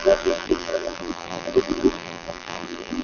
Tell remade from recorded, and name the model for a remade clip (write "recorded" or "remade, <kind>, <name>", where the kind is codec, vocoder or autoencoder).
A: remade, vocoder, BigVGAN v2